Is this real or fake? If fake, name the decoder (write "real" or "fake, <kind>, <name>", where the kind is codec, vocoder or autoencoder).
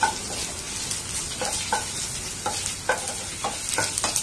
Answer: real